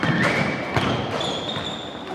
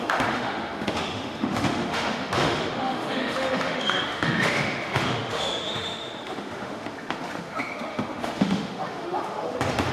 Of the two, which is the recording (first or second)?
first